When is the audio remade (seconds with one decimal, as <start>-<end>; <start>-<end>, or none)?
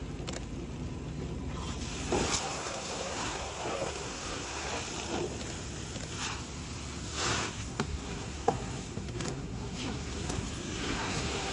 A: 2.4-4.7; 7.0-11.5